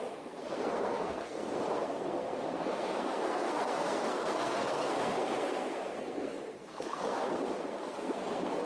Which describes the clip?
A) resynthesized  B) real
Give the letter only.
A